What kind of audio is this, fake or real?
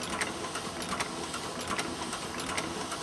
real